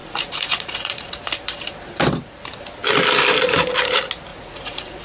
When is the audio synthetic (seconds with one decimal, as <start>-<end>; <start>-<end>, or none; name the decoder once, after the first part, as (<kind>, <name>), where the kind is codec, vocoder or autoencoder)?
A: 0.0-1.1 (vocoder, Vocos); 4.3-5.0